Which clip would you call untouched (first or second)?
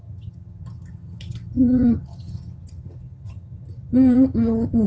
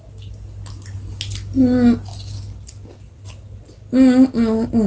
second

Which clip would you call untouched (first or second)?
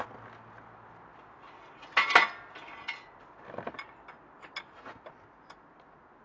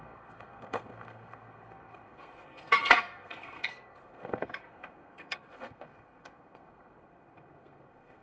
first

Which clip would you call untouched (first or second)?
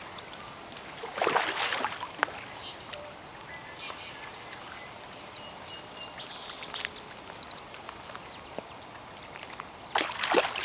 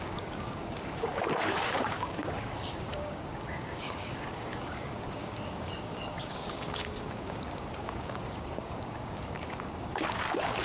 first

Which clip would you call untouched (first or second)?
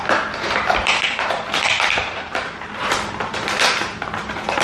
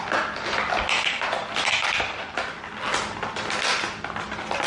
second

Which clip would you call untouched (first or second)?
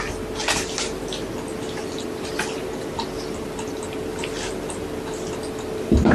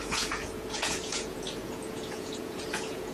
first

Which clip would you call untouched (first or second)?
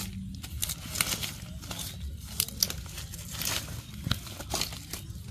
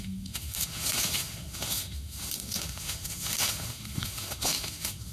first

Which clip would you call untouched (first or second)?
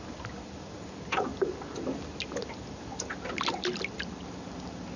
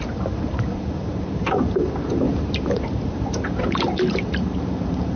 first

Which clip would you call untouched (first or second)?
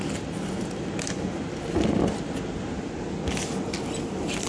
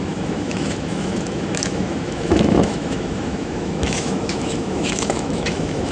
first